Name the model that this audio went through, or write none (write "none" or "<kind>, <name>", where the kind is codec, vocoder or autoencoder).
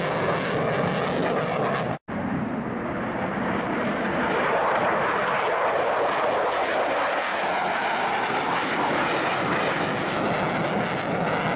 none